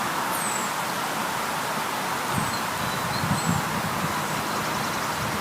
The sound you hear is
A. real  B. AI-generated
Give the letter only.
A